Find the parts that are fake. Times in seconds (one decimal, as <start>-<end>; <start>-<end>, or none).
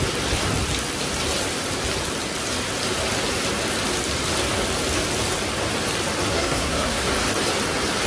6.3-7.1